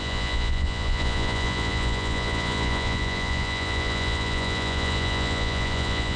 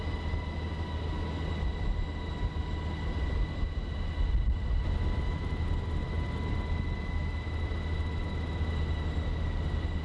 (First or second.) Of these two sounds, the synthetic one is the first